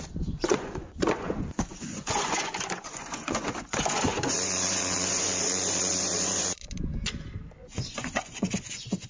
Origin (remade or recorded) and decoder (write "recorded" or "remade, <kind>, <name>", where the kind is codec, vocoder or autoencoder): remade, vocoder, Vocos